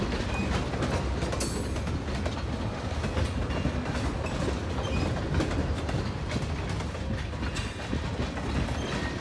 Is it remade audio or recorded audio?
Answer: recorded